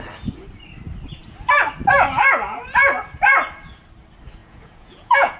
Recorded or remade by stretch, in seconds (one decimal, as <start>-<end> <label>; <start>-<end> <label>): 0.0-4.4 recorded; 4.4-5.4 remade